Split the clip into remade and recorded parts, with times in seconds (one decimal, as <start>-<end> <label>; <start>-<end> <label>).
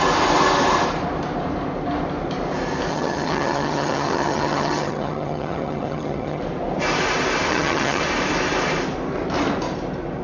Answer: 0.0-2.9 recorded; 2.9-6.4 remade; 6.4-7.5 recorded; 7.5-8.0 remade; 8.0-10.2 recorded